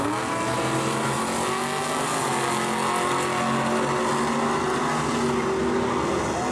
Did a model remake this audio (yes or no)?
no